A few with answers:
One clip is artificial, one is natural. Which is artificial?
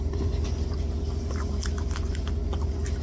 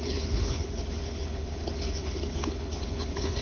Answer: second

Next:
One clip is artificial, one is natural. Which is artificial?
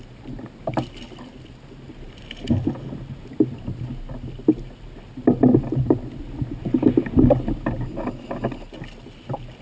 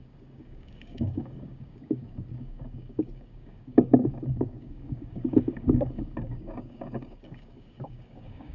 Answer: second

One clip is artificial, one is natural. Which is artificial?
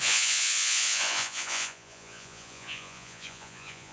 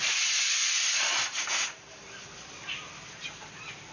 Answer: first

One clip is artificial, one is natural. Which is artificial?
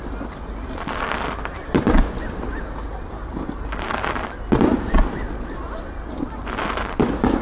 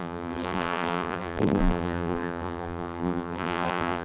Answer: second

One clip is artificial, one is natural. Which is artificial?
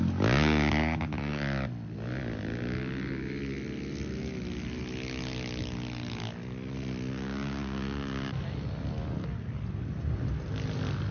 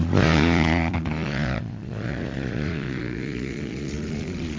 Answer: second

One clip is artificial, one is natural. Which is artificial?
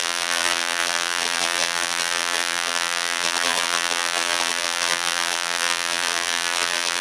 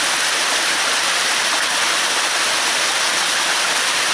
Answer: first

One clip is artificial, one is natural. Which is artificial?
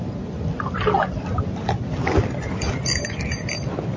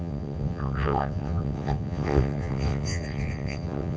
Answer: second